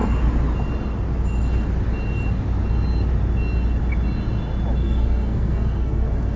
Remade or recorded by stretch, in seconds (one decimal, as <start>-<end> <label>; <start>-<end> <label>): 0.0-4.8 recorded; 4.8-6.4 remade